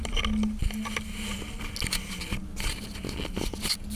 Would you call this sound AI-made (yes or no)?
no